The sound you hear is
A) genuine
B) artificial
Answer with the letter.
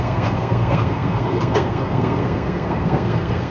B